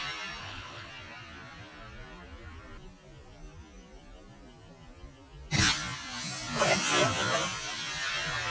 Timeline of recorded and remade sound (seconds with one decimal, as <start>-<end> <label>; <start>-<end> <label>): 0.0-0.4 recorded; 0.4-0.9 remade; 0.9-8.5 recorded